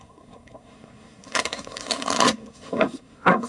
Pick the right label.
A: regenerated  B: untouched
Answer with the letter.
A